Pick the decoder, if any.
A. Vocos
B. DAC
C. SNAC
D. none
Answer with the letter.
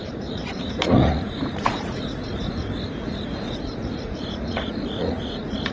A